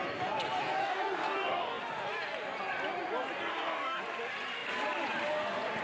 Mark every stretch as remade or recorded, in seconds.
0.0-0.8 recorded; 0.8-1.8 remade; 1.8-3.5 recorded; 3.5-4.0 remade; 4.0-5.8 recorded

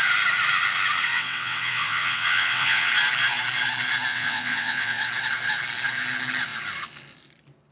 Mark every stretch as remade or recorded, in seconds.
0.0-1.1 recorded; 1.1-2.9 remade; 2.9-4.1 recorded; 4.1-5.1 remade; 5.1-7.7 recorded